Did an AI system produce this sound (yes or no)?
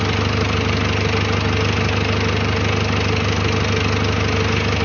no